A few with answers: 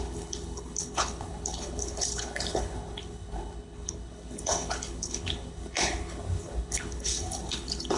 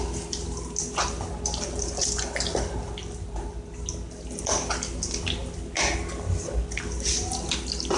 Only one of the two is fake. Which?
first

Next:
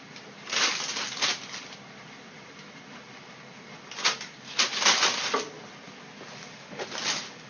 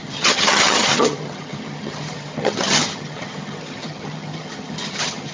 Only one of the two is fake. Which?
second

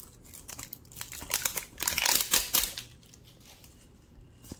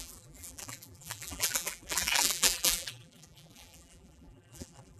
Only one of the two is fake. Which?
second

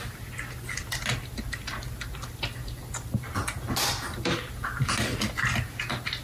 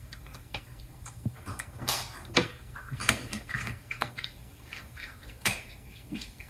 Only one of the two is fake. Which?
second